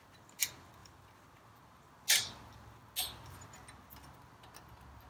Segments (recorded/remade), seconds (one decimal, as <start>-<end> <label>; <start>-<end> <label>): 0.0-5.1 recorded